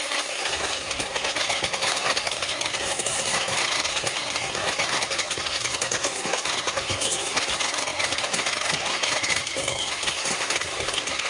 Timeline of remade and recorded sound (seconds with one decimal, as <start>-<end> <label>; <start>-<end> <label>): 0.0-11.3 remade